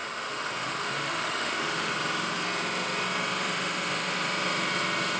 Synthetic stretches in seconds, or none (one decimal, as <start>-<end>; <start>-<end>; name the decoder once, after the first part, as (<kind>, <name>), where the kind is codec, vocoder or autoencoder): 0.0-1.9 (autoencoder, DAC-VAE)